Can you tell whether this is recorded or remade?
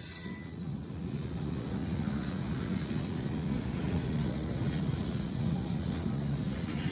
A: remade